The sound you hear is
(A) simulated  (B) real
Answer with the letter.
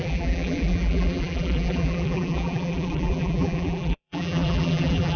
A